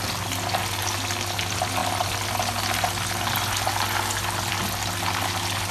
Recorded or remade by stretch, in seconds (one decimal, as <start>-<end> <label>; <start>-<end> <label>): 0.0-5.7 recorded